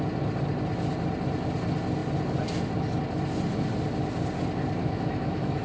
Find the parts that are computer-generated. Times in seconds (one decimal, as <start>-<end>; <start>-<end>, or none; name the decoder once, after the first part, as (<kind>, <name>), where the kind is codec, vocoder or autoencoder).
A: 4.8-5.6 (autoencoder, DAC-VAE)